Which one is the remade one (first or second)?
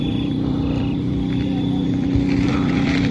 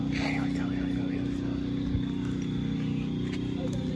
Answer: first